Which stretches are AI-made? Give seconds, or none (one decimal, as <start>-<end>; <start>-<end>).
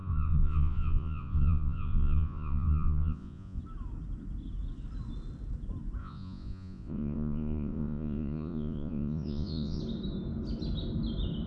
0.0-3.6; 6.0-9.8